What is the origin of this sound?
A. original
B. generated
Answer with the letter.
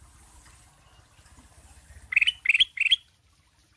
A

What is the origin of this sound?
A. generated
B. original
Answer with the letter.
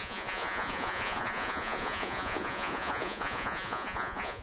A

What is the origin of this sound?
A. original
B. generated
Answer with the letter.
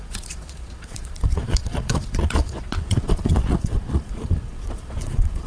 B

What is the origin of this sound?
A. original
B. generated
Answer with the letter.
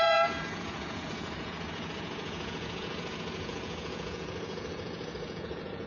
B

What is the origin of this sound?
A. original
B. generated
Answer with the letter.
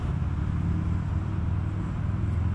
A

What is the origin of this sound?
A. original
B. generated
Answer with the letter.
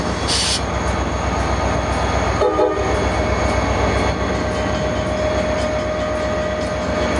A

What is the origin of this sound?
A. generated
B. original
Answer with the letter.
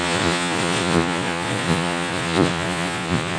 A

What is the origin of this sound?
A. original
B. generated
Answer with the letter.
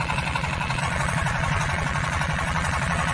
B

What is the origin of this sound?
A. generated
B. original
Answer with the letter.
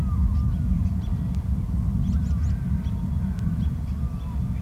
B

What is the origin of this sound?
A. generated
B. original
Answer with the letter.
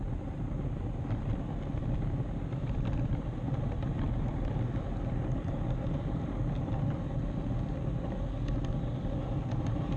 B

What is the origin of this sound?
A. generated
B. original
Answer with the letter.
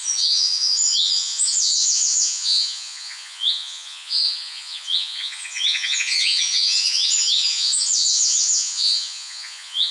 A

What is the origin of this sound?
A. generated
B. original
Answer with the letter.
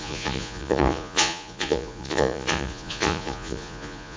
A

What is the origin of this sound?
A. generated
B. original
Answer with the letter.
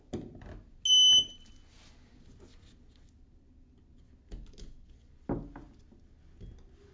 B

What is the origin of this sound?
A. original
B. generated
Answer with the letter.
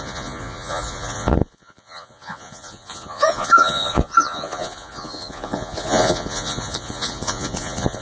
B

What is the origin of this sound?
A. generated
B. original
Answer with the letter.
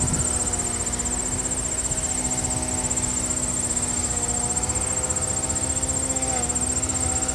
B